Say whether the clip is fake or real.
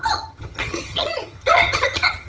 fake